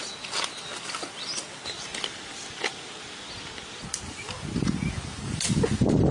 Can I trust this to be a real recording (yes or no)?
yes